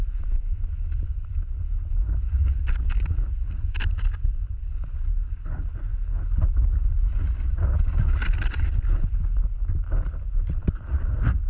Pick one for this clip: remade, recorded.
recorded